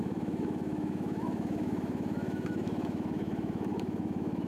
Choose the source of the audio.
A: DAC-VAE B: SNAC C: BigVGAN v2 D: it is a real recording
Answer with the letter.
A